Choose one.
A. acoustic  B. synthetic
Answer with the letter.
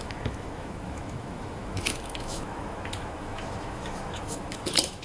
B